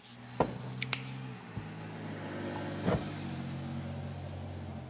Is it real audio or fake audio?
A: real